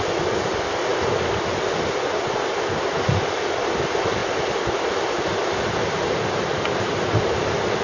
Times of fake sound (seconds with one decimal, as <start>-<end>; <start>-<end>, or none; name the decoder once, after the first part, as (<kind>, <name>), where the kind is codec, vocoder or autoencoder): none